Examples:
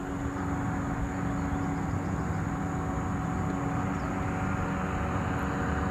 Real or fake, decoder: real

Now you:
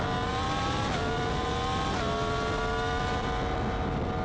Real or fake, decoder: real